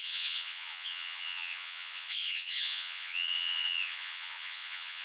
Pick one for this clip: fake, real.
fake